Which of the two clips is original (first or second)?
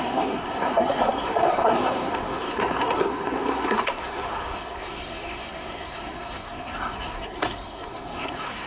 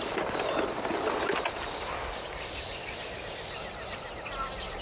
second